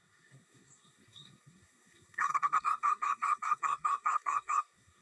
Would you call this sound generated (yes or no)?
yes